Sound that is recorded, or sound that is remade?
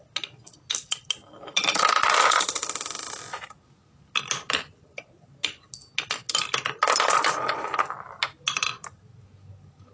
recorded